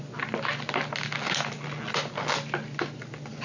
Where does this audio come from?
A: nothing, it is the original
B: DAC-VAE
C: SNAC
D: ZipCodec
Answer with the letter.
A